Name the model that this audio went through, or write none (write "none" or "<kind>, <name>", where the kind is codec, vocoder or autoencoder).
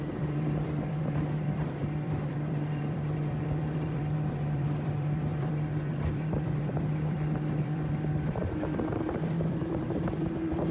vocoder, BigVGAN v2